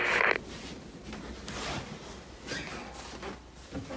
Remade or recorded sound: recorded